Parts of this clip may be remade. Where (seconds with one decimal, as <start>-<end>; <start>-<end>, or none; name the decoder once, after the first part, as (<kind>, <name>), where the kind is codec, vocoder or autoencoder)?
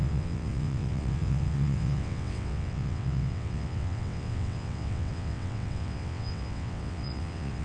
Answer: 0.0-7.6 (vocoder, WaveNeXt)